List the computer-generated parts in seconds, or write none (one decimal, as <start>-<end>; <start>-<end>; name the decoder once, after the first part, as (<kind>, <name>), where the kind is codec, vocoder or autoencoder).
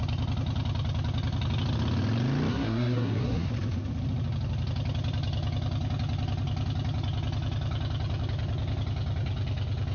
2.5-3.5 (codec, SNAC)